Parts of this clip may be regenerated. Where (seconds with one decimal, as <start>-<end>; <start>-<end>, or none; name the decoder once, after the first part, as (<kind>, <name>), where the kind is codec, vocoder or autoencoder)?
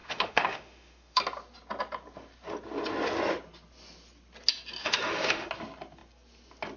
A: 0.0-1.2 (autoencoder, DAC-VAE); 4.8-5.5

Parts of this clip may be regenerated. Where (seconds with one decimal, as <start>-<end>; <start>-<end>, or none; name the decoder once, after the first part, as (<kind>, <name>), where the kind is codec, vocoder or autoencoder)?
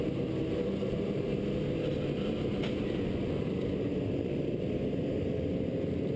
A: 0.8-1.4 (vocoder, BigVGAN v2)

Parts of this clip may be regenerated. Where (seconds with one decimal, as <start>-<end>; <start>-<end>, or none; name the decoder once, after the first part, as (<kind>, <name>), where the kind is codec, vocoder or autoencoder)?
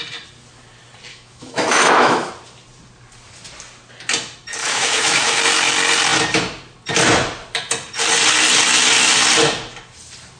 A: 1.1-2.3 (autoencoder, DAC-VAE); 4.6-5.4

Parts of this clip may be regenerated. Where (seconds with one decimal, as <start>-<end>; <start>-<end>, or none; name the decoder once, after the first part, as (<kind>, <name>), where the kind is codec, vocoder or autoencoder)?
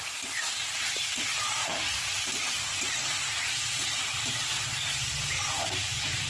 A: 0.0-6.3 (vocoder, BigVGAN v2)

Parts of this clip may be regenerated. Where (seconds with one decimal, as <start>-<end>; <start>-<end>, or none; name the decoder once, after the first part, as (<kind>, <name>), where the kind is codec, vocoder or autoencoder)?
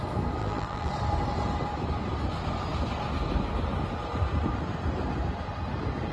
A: 0.4-0.9 (vocoder, BigVGAN v2)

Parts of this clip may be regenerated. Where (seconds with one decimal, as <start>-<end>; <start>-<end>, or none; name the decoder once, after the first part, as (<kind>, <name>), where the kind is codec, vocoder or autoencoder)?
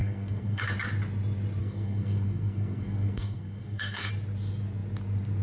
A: 0.0-0.6 (codec, SNAC); 1.6-4.1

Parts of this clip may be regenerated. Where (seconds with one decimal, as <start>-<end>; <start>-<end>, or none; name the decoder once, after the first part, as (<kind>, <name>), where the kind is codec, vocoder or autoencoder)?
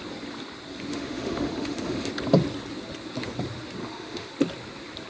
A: 0.9-2.1 (autoencoder, DAC-VAE); 3.8-4.3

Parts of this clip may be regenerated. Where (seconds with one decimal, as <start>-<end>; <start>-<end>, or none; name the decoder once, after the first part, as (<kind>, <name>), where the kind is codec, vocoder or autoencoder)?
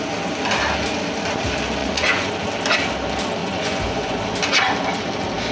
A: 1.8-2.3 (vocoder, Vocos); 3.4-4.2